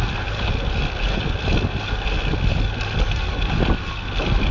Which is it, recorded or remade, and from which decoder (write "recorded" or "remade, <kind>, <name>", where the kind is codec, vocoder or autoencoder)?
recorded